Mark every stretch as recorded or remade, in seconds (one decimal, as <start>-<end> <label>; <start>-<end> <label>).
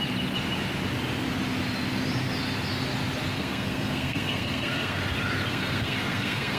0.0-3.3 recorded; 3.3-5.0 remade; 5.0-5.5 recorded; 5.5-6.6 remade